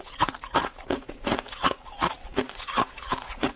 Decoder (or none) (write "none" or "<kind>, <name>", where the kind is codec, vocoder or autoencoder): vocoder, Vocos